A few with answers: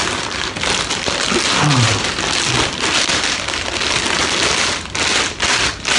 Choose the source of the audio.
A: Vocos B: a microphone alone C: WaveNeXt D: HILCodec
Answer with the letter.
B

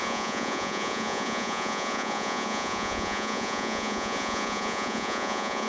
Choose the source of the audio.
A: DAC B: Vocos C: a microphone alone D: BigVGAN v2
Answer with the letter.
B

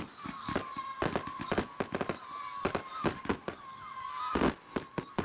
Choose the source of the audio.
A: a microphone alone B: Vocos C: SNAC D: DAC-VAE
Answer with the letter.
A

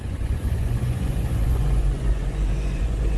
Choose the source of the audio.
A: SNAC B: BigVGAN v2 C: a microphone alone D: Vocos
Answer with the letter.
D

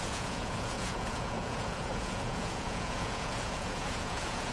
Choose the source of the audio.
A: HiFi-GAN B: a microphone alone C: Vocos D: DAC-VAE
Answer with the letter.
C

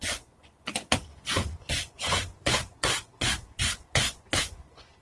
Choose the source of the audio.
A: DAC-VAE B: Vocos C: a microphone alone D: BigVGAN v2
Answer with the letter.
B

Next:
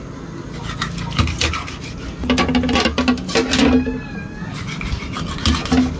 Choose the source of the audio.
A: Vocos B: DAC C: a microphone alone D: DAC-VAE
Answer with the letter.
C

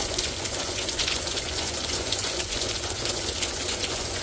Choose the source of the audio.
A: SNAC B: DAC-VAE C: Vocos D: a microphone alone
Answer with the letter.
C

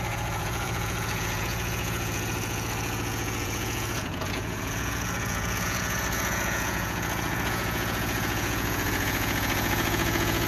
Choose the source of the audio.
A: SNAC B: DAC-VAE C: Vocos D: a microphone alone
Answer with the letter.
C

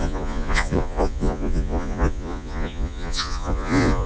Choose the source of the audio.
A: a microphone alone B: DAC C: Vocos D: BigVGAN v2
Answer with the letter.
C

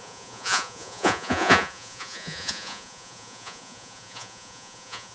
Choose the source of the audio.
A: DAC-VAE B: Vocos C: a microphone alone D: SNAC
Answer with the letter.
B